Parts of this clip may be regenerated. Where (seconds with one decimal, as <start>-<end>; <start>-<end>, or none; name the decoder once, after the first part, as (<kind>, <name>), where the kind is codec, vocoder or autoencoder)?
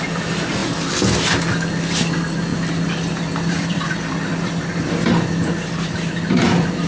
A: none